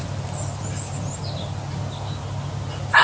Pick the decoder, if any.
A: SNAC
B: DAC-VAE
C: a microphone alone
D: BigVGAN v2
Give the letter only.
C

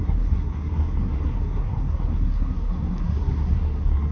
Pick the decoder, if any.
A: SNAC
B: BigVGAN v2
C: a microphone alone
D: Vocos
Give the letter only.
A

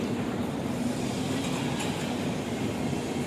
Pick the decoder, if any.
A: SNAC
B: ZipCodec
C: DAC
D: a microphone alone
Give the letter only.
D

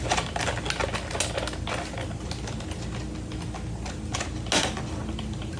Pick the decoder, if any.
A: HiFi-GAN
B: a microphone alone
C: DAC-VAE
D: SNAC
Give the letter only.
B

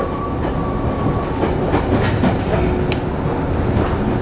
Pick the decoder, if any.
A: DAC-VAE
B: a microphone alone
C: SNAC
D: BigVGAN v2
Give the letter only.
B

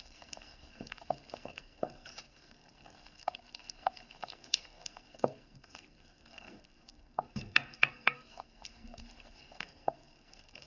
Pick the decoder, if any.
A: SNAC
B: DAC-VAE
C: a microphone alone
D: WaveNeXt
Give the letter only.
A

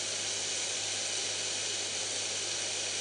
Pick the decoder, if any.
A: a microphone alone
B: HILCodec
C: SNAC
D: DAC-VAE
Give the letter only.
A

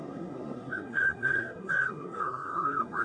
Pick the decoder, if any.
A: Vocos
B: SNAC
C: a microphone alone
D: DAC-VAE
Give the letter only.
B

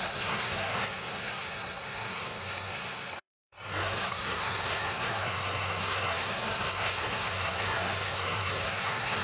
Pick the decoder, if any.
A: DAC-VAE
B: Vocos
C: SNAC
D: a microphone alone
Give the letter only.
C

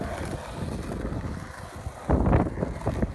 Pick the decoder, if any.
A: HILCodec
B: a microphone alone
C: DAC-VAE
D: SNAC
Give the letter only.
B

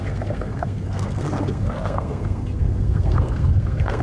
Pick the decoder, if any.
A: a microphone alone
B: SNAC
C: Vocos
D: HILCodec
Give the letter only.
B